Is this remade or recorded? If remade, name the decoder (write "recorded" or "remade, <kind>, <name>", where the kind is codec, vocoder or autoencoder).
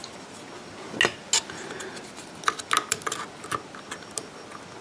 recorded